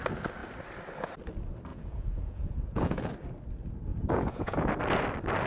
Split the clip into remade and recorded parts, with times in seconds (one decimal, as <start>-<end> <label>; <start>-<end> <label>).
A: 0.0-1.7 recorded; 1.7-3.1 remade; 3.1-3.9 recorded; 3.9-4.7 remade; 4.7-5.5 recorded